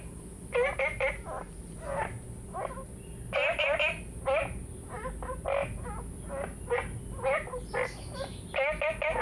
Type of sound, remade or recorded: recorded